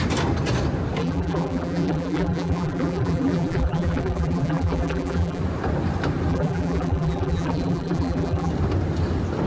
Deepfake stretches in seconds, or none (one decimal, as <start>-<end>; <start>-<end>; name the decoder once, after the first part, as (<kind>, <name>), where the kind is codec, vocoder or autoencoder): 1.0-5.4 (vocoder, BigVGAN v2); 6.3-8.5